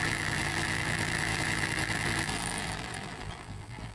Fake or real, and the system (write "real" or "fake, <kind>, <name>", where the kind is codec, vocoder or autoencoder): fake, vocoder, BigVGAN v2